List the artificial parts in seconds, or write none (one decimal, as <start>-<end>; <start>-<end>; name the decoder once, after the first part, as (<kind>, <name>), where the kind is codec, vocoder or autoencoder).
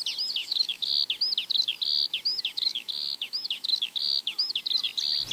0.4-0.9 (autoencoder, DAC-VAE); 2.3-4.6